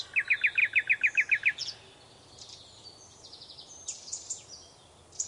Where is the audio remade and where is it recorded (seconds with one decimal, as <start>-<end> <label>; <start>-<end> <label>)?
0.0-5.3 recorded